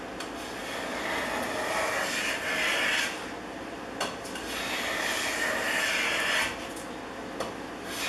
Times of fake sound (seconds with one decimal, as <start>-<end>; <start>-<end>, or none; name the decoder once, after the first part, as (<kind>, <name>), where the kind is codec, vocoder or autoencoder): none